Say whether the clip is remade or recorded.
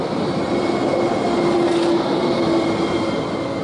recorded